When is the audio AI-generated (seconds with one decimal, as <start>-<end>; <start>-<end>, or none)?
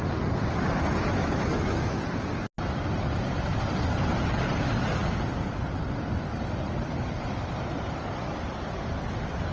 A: 1.2-2.0